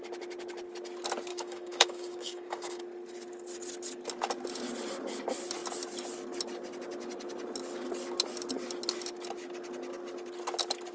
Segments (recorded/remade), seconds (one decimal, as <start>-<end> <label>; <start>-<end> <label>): 0.0-1.3 recorded; 1.3-2.8 remade; 2.8-10.9 recorded